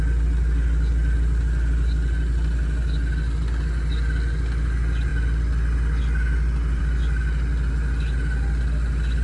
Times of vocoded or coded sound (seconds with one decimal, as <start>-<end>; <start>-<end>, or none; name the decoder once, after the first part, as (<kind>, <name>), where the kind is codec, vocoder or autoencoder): none